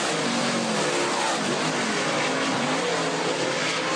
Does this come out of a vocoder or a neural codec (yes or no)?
no